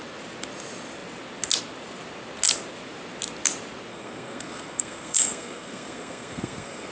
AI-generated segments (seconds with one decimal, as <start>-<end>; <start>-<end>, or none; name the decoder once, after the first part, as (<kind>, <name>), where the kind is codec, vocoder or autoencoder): 3.9-6.9 (codec, SNAC)